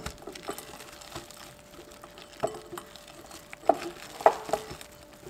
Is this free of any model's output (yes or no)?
yes